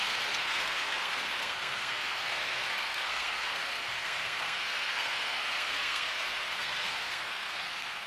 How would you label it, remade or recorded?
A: remade